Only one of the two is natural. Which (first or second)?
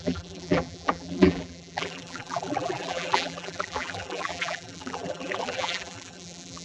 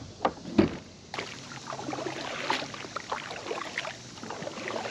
second